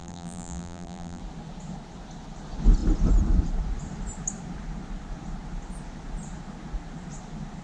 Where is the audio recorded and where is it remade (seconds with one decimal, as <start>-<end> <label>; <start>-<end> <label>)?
0.0-1.2 remade; 1.2-7.6 recorded